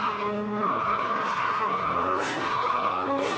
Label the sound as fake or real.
fake